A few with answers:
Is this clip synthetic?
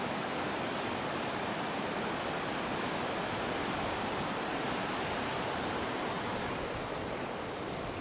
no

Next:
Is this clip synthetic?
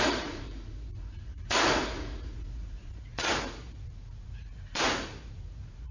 yes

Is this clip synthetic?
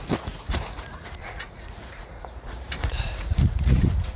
yes